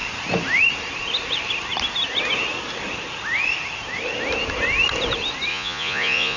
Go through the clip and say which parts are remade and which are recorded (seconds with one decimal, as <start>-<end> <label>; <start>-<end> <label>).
0.0-5.5 recorded; 5.5-6.4 remade